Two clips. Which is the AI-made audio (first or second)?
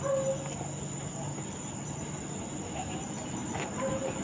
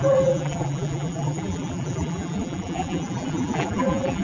second